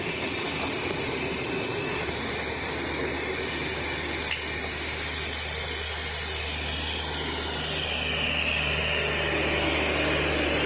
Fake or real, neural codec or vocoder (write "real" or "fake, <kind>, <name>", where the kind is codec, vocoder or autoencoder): real